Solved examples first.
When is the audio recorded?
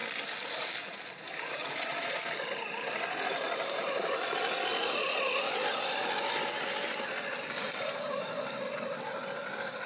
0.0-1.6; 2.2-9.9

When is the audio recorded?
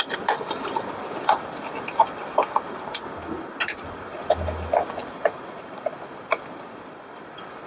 0.0-5.0; 5.7-7.7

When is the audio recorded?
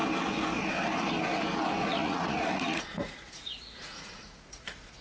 0.0-1.9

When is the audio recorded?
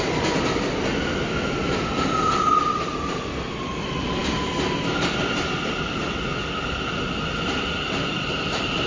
0.0-8.9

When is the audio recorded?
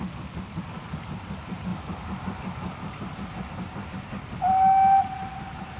0.0-5.8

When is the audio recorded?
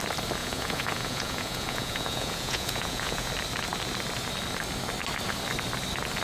0.0-0.4; 3.3-6.2